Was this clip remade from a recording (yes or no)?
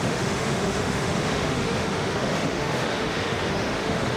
yes